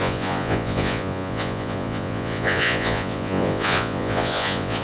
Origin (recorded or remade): remade